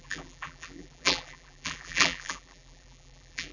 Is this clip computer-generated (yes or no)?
yes